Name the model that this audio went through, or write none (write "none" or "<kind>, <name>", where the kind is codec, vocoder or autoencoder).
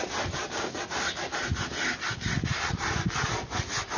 none